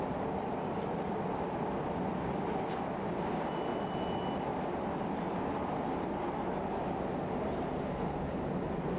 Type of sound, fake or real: real